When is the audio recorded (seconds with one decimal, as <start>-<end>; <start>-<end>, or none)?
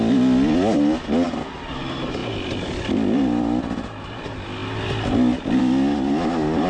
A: 0.0-6.7